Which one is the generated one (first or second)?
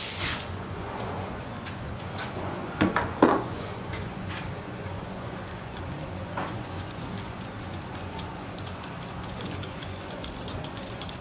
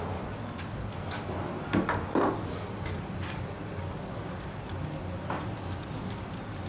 first